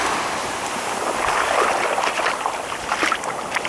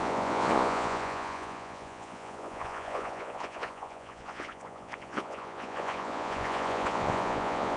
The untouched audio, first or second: first